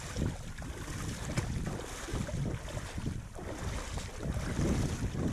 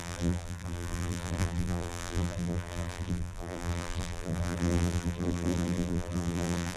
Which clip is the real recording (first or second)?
first